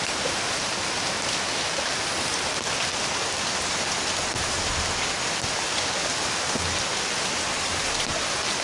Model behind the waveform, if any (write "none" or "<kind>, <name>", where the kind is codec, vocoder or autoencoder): none